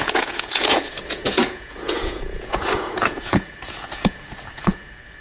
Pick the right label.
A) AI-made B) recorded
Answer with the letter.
A